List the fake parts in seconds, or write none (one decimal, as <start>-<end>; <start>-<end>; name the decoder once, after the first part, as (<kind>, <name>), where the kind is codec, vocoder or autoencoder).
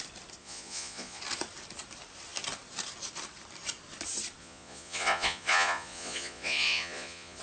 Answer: 0.4-1.2 (vocoder, Vocos); 4.4-7.4